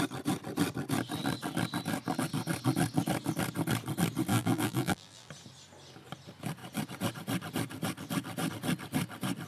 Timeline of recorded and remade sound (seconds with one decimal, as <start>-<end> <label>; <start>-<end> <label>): 0.0-4.3 recorded; 4.3-5.3 remade; 5.3-9.5 recorded